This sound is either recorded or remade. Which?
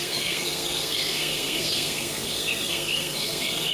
remade